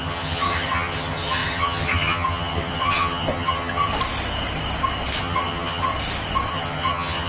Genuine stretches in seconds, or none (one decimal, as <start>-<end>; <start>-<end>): 3.9-5.2; 5.9-6.5